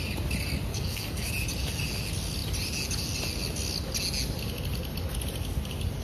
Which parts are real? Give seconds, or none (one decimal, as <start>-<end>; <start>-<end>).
0.0-0.7; 1.3-6.0